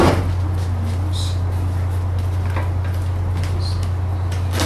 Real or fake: real